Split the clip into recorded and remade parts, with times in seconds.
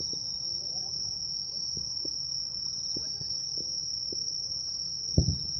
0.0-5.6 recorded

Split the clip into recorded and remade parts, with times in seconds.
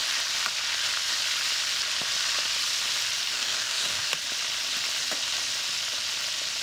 0.0-3.3 recorded; 3.3-4.1 remade; 4.1-6.6 recorded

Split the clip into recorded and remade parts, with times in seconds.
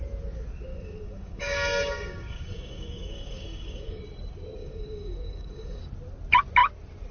0.0-0.7 recorded; 0.7-4.0 remade; 4.0-4.6 recorded; 4.6-5.8 remade; 5.8-7.1 recorded